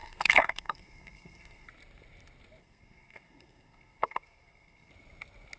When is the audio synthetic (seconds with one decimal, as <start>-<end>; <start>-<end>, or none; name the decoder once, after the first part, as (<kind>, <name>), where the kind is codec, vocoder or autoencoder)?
0.0-1.7 (codec, SNAC); 2.6-4.9